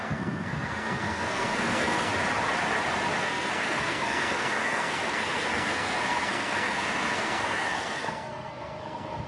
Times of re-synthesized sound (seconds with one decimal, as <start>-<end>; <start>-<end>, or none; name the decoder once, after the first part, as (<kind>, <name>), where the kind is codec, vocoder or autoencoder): 0.0-2.1 (codec, SNAC); 3.2-9.3